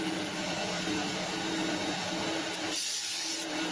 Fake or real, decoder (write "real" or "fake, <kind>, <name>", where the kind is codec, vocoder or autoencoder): real